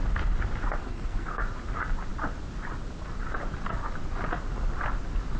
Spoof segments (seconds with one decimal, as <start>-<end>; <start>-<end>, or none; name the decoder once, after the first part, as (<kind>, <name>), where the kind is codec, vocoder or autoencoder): 0.8-1.4 (codec, SNAC)